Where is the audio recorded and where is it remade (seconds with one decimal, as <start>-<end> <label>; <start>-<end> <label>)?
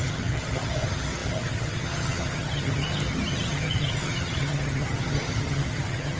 0.0-6.2 remade